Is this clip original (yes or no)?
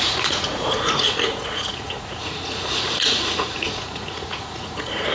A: no